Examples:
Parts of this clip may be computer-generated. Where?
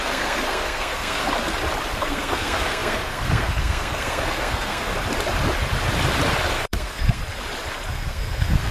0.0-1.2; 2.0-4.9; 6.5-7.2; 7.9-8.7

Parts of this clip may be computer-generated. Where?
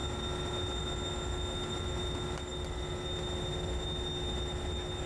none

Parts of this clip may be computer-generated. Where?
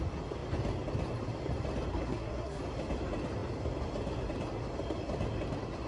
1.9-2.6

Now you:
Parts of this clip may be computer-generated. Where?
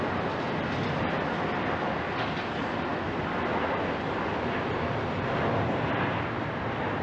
none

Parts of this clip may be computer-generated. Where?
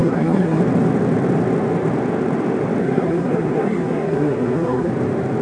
0.0-0.6; 2.8-4.9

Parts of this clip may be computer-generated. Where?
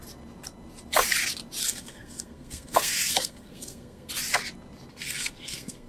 1.6-4.1; 4.9-5.9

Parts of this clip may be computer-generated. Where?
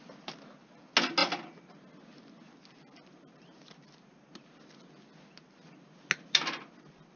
none